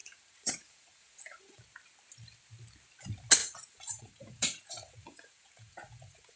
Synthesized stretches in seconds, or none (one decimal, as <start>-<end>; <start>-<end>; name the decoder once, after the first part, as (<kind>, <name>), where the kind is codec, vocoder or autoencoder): 0.0-1.6 (vocoder, Vocos); 3.4-6.4